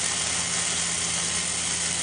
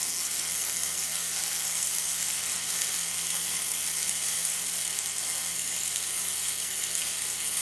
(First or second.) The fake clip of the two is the second